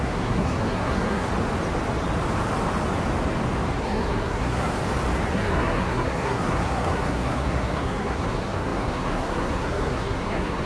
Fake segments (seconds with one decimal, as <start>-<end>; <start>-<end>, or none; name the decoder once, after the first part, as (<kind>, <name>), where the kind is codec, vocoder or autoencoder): 0.0-1.3 (codec, SNAC); 3.8-4.8; 5.3-10.7